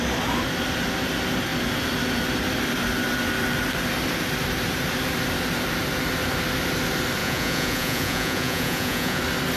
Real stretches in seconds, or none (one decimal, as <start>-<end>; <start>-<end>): 0.0-7.2; 9.2-9.6